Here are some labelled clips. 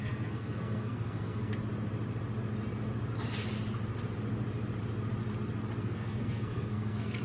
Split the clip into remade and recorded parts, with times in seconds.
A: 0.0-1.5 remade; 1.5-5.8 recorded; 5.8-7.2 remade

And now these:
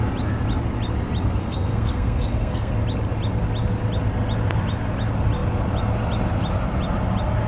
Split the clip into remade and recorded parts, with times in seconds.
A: 0.0-1.4 recorded; 1.4-2.7 remade; 2.7-7.5 recorded

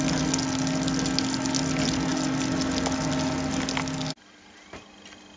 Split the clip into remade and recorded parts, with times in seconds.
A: 0.0-5.4 recorded

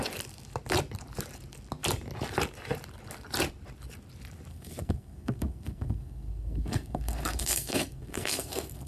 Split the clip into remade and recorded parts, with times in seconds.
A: 0.0-4.5 recorded; 4.5-8.9 remade

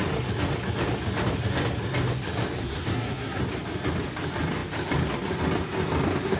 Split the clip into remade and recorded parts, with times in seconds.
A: 0.0-2.6 recorded; 2.6-3.4 remade; 3.4-6.4 recorded

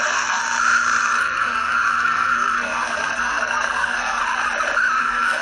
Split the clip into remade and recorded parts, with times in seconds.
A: 0.0-0.4 remade; 0.4-1.0 recorded; 1.0-4.2 remade; 4.2-5.0 recorded; 5.0-5.4 remade